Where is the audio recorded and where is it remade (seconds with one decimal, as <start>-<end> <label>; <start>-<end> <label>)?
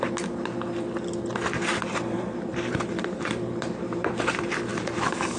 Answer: 0.0-1.9 recorded; 1.9-4.1 remade; 4.1-4.7 recorded; 4.7-5.4 remade